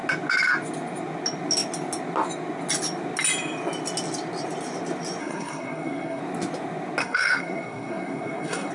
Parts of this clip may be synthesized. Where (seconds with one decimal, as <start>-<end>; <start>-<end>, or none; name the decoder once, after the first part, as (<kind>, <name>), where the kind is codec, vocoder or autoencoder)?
5.2-6.2 (codec, SNAC); 7.0-8.7